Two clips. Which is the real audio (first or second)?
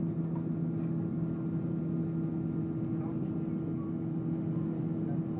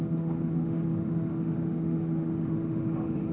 first